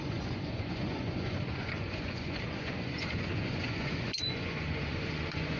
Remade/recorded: remade